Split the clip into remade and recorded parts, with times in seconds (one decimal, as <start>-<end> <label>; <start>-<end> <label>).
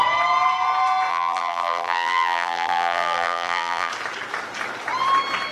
0.0-1.1 recorded; 1.1-3.9 remade; 3.9-5.5 recorded